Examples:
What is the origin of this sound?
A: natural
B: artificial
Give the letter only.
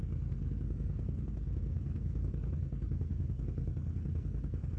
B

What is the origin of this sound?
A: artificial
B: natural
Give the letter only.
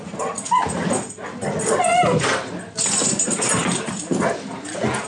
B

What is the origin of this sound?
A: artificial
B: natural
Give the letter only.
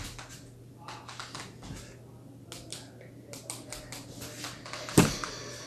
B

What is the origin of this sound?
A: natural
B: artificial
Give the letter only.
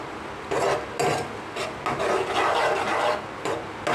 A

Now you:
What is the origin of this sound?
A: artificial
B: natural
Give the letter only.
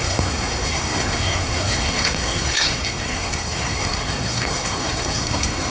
A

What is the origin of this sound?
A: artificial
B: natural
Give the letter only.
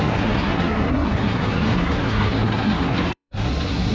A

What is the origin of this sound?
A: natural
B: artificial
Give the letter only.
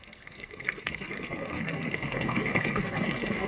B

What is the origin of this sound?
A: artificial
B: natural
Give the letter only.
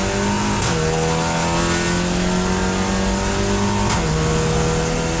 B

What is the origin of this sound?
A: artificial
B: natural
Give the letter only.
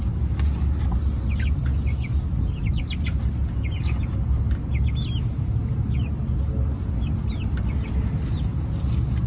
B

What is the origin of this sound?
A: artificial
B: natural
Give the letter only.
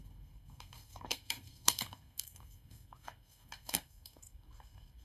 A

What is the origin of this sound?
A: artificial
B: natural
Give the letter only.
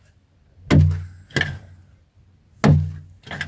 B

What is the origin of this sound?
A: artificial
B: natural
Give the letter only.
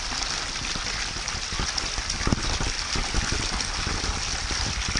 B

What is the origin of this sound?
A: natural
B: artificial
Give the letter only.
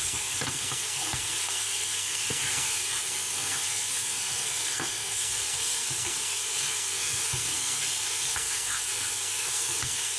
B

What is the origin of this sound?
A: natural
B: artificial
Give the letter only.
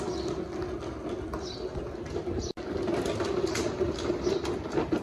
A